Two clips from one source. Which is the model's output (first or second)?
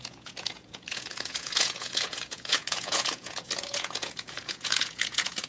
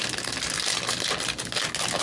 first